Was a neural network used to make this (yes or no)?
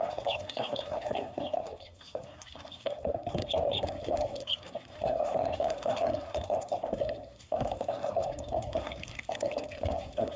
yes